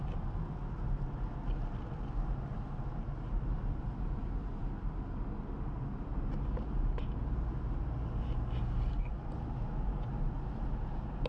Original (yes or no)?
yes